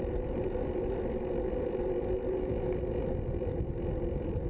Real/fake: fake